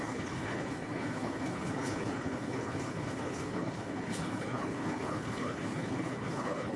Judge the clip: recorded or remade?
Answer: remade